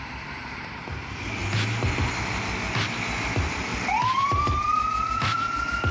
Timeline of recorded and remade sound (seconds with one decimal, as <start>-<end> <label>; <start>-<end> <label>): 0.0-1.4 remade; 1.4-2.9 recorded; 2.9-5.9 remade